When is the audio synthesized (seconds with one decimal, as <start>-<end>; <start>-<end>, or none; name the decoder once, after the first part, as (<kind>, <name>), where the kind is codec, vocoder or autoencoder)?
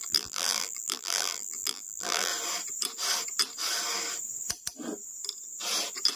0.0-2.3 (vocoder, BigVGAN v2)